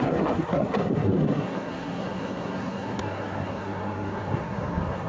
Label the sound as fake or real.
fake